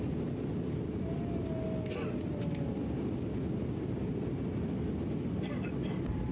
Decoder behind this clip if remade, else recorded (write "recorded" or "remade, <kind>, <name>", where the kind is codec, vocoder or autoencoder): recorded